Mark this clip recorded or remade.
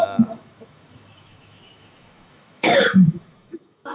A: remade